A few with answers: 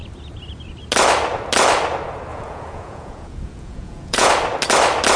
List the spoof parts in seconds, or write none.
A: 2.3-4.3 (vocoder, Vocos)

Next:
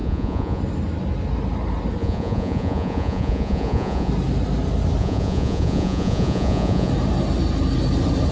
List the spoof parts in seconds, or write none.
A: 0.0-0.6 (vocoder, Vocos); 2.0-4.1; 5.0-6.9

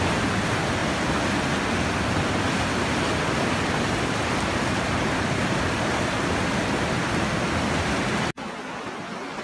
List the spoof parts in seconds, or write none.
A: none

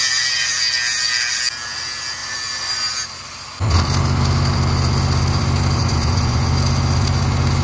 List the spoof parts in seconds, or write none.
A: 5.8-6.5 (vocoder, Vocos)

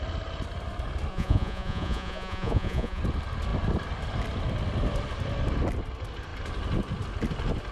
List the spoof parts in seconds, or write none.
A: 1.1-3.0 (vocoder, Vocos)

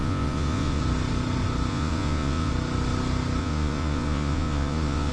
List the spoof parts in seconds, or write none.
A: 0.0-0.8 (vocoder, Vocos); 1.7-2.5; 3.4-5.1

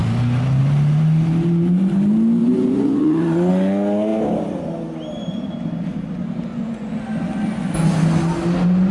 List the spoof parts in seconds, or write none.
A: 2.4-3.5 (vocoder, Vocos); 6.5-7.0